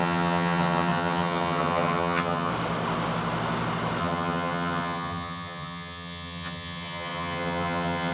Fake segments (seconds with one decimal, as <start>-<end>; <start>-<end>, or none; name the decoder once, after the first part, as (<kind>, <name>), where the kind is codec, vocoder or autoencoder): 0.0-2.5 (vocoder, HiFi-GAN); 4.0-8.1